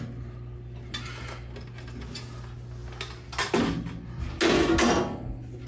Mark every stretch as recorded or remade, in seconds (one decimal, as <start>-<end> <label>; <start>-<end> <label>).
0.0-5.7 recorded